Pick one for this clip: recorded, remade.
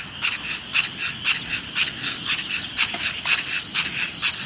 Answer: recorded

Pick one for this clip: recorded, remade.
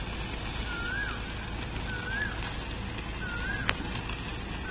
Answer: recorded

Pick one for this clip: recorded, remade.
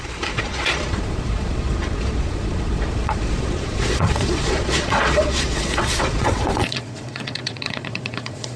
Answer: remade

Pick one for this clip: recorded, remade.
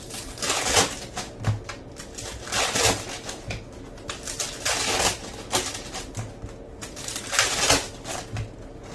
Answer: recorded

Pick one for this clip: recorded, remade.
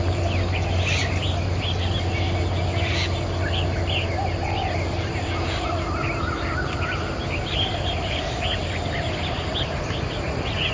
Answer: recorded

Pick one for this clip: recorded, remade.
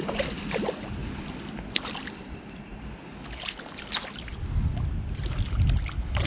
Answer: recorded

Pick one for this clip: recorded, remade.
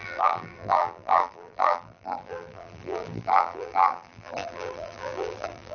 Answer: remade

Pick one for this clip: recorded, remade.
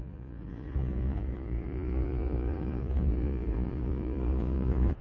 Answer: remade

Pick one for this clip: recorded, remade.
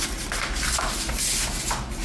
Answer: recorded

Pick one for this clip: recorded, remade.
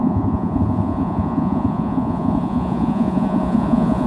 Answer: remade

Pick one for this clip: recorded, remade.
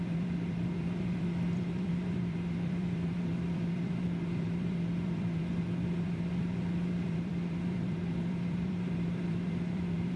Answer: remade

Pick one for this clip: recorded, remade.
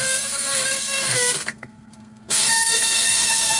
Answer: remade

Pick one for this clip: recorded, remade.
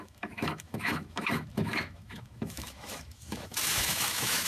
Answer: remade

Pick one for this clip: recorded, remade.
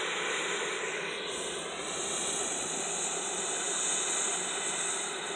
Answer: recorded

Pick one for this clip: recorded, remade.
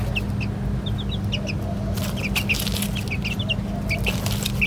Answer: recorded